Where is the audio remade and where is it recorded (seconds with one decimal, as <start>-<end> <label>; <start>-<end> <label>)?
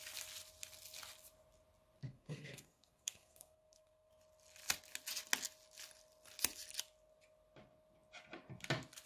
0.0-2.0 recorded; 2.0-4.1 remade; 4.1-9.1 recorded